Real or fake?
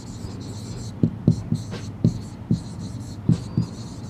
real